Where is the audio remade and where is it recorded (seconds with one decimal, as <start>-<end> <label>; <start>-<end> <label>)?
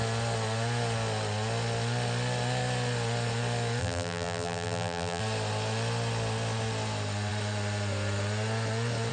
0.0-3.8 recorded; 3.8-5.2 remade; 5.2-9.1 recorded